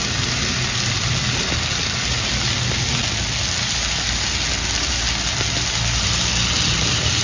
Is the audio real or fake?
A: real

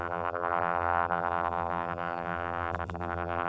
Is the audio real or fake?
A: fake